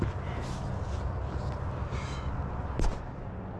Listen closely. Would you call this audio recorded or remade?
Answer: recorded